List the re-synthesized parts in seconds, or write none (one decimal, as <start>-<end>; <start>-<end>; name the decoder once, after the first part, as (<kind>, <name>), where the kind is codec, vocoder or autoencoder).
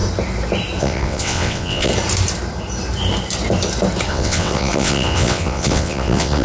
0.8-1.9 (vocoder, WaveNeXt); 4.1-6.4